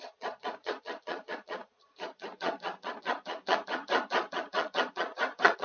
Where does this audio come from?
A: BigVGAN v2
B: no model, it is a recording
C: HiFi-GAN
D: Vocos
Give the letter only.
D